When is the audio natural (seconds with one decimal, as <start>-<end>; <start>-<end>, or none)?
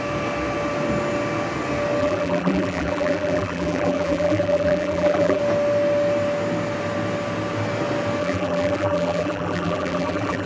0.0-2.0; 5.4-8.2